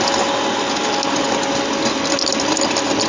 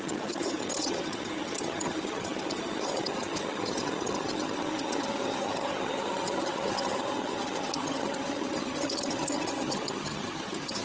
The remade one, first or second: second